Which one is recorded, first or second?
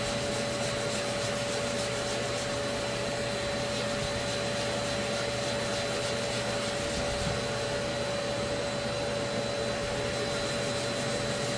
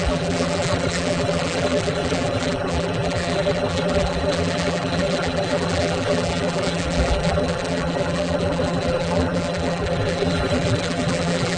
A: first